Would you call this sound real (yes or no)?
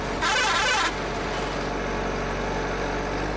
yes